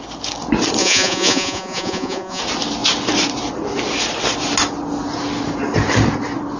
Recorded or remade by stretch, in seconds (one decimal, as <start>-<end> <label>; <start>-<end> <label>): 0.0-0.8 recorded; 0.8-2.4 remade; 2.4-6.6 recorded